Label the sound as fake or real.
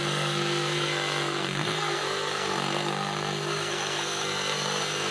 fake